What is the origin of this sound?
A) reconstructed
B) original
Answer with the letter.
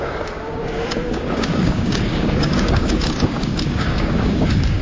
A